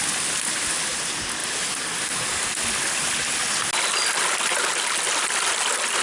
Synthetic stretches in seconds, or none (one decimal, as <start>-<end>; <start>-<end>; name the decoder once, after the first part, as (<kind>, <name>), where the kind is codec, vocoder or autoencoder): none